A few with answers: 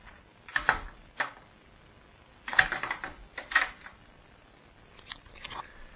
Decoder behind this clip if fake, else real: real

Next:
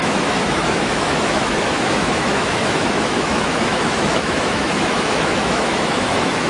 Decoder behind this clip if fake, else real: fake, autoencoder, DAC-VAE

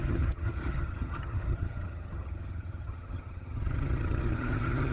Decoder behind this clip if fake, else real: fake, vocoder, HiFi-GAN